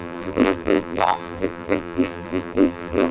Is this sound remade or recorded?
remade